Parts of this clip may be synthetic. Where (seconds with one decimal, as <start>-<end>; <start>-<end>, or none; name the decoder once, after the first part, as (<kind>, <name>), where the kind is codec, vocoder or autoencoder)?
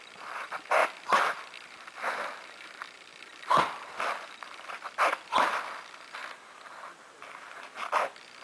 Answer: 0.0-6.2 (vocoder, BigVGAN v2); 7.0-8.4